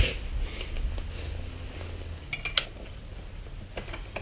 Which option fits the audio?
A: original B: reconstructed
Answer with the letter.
A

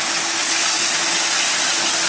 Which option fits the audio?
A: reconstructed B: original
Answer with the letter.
B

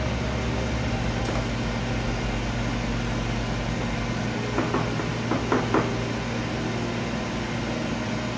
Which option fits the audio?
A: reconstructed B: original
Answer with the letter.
B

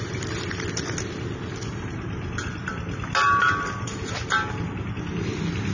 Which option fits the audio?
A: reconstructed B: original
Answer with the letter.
B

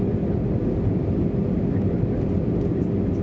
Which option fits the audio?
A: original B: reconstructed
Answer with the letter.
A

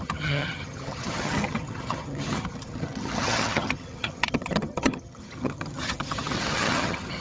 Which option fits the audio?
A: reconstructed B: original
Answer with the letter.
A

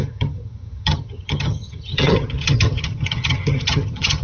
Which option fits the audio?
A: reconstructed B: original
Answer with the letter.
A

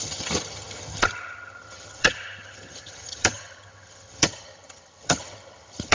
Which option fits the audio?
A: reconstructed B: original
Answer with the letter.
A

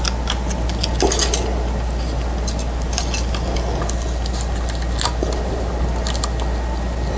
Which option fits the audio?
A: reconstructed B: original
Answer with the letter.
B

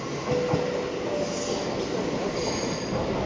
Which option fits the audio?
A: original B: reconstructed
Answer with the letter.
A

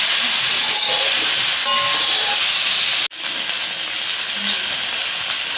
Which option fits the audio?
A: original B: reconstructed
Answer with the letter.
A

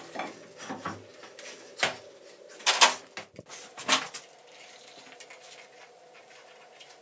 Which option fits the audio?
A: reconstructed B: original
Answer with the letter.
B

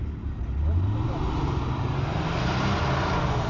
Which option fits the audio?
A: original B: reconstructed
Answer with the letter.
A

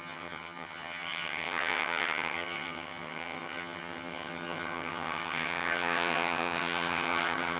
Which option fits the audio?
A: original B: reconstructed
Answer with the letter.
B